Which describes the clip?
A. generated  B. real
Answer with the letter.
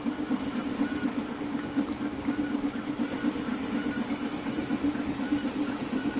B